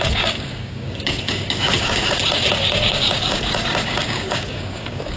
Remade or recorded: remade